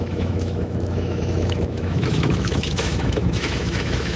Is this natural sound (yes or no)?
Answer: no